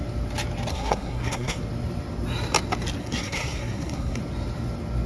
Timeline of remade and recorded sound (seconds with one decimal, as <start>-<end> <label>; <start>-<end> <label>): 0.0-0.7 recorded; 0.7-1.6 remade; 1.6-3.0 recorded; 3.0-4.2 remade; 4.2-5.1 recorded